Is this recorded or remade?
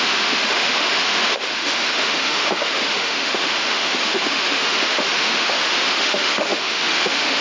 remade